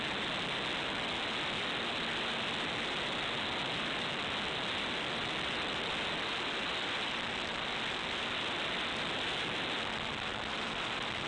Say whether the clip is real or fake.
real